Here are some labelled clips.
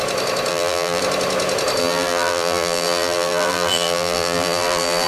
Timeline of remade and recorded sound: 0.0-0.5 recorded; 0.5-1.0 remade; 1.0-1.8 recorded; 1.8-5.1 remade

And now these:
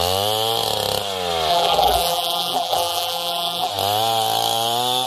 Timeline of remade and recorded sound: 0.0-1.5 recorded; 1.5-3.7 remade; 3.7-5.1 recorded

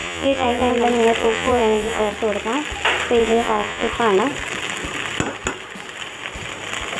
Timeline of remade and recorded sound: 0.0-0.7 remade; 0.7-1.2 recorded; 1.2-2.1 remade; 2.1-3.2 recorded; 3.2-3.9 remade; 3.9-7.0 recorded

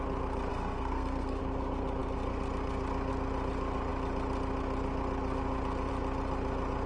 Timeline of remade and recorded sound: 0.0-0.5 recorded; 0.5-1.4 remade; 1.4-6.9 recorded

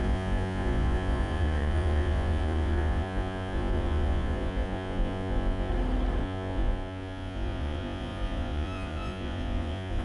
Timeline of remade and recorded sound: 0.0-5.7 remade; 5.7-6.2 recorded; 6.2-10.0 remade

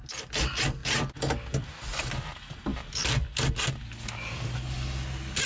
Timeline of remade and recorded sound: 0.0-5.5 recorded

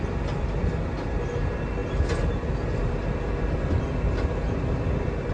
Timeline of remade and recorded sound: 0.0-5.3 recorded